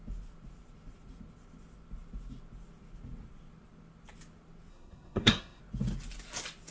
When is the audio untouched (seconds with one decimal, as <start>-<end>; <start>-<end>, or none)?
0.0-4.7; 5.6-6.7